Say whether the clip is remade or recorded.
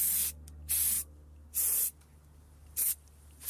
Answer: recorded